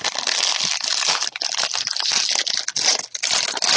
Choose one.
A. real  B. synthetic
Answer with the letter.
A